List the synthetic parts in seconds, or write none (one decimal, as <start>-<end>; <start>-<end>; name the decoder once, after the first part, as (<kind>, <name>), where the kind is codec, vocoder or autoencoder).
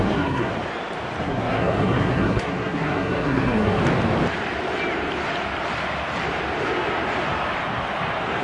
0.0-0.5 (codec, SNAC); 1.2-3.8